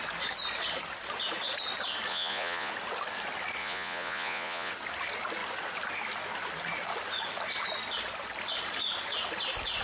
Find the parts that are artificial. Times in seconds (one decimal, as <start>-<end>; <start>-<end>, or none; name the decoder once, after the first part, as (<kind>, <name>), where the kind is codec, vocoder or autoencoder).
2.1-2.7 (vocoder, Vocos); 3.6-4.7